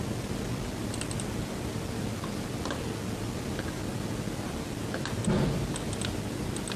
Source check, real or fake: real